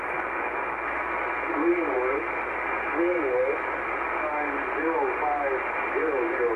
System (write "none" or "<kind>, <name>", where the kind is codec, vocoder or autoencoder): none